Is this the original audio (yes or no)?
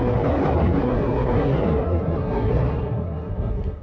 no